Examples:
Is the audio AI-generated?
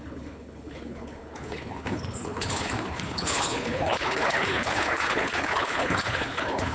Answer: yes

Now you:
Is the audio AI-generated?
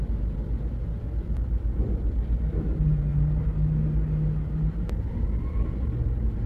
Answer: no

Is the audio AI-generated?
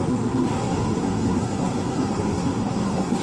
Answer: yes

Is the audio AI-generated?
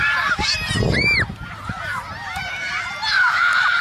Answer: yes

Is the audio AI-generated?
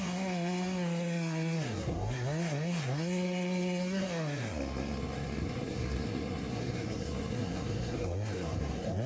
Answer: yes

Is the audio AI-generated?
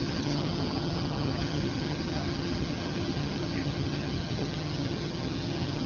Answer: yes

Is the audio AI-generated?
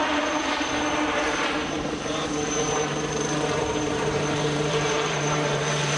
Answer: yes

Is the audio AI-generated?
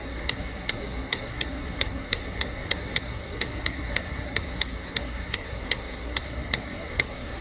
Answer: yes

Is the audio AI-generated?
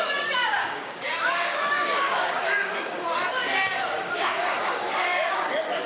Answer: yes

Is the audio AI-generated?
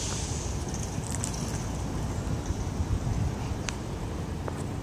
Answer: no